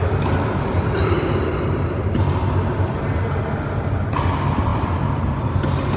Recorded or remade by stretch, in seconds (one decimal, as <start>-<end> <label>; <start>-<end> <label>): 0.0-6.0 remade